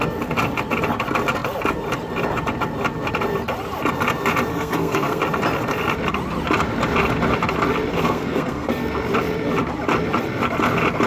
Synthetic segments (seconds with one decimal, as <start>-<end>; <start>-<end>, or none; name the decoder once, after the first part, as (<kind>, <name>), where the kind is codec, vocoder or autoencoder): 4.5-5.2 (codec, SNAC); 7.9-8.7